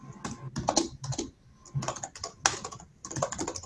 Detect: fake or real real